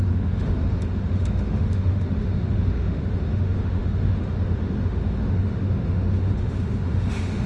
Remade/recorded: remade